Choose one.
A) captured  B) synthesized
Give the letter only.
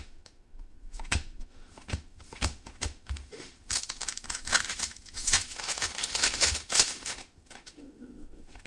B